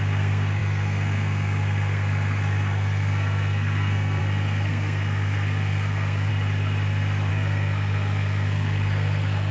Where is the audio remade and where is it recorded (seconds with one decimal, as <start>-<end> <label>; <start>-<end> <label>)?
0.0-6.3 remade; 6.3-7.3 recorded; 7.3-9.5 remade